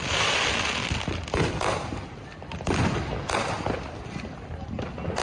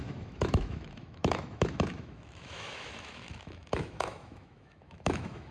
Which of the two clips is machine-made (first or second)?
second